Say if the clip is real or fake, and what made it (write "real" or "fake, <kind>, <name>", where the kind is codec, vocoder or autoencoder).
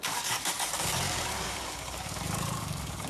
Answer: fake, codec, DAC